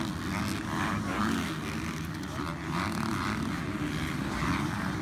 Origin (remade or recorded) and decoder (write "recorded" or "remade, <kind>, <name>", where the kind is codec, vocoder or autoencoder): recorded